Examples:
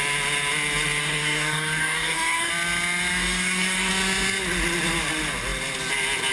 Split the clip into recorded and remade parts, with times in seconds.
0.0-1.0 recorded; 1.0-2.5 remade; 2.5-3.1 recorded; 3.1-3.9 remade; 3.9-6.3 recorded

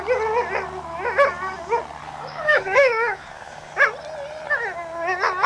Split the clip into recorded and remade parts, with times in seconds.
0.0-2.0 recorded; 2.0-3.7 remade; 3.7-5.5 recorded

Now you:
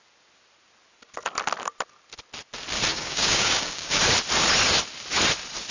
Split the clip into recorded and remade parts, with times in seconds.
0.0-2.9 recorded; 2.9-4.0 remade; 4.0-5.7 recorded

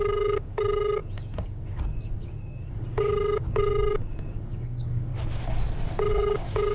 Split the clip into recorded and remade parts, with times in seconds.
0.0-5.1 remade; 5.1-6.1 recorded; 6.1-6.7 remade

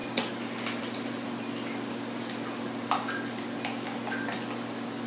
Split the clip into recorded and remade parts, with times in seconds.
0.0-5.1 recorded